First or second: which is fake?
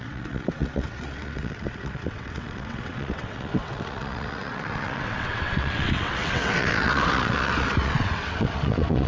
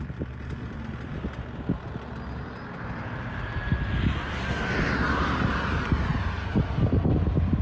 first